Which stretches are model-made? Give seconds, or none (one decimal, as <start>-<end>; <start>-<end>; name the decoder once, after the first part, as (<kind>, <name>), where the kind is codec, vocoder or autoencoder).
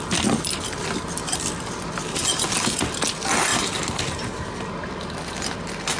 none